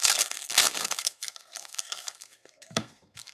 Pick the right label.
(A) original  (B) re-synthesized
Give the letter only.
B